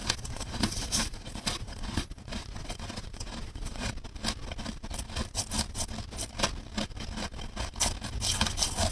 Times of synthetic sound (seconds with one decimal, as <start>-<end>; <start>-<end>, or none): 0.0-3.9